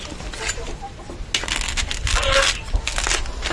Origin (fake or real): real